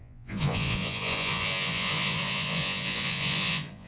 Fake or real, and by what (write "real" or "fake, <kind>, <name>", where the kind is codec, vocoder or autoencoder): fake, vocoder, Vocos